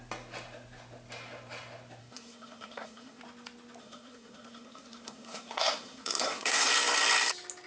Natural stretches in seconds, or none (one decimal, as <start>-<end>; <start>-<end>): 0.0-2.0; 3.2-3.8; 6.7-7.7